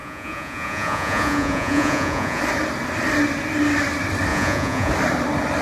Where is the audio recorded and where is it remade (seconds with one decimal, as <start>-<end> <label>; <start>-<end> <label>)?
0.0-2.4 remade; 2.4-4.3 recorded; 4.3-4.9 remade; 4.9-5.6 recorded